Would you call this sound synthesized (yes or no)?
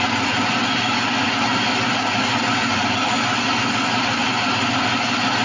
no